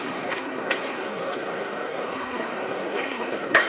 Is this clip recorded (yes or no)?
no